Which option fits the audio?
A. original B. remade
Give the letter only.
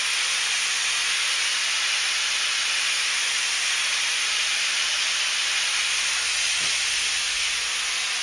A